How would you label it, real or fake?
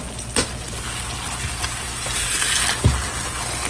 real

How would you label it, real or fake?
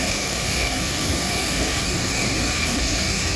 fake